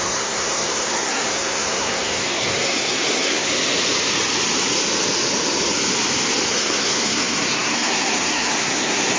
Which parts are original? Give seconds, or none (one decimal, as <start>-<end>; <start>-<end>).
3.5-6.5